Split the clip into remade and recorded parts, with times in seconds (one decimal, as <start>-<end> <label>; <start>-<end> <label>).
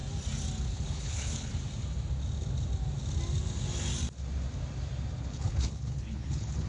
0.0-0.7 recorded; 0.7-1.5 remade; 1.5-5.2 recorded; 5.2-6.7 remade